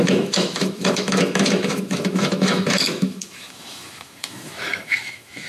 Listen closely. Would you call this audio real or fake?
fake